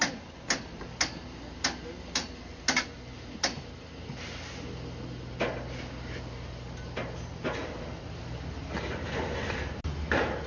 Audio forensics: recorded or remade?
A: recorded